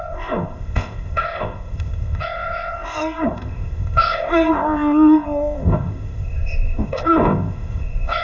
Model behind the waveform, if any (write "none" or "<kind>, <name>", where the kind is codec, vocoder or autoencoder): codec, ZipCodec